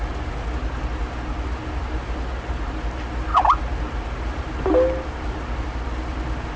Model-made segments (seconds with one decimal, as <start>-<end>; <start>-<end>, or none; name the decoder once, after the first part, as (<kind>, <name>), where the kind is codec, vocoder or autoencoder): none